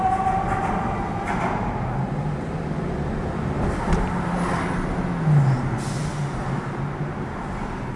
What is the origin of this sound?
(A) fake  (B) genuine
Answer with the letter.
B